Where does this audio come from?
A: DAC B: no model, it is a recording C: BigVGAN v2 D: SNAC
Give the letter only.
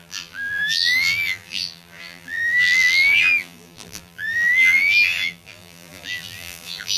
C